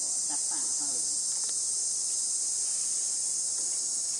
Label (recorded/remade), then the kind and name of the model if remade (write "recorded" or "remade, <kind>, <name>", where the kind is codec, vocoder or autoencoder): recorded